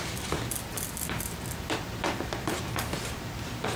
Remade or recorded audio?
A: remade